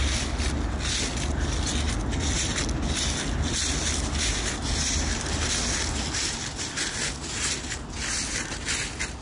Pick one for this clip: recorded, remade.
recorded